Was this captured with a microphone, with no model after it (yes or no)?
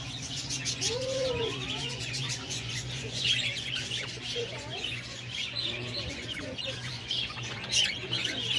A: no